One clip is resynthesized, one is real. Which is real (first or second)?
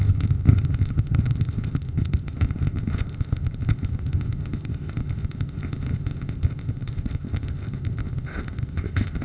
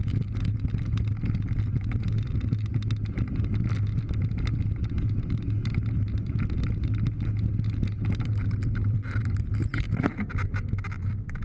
second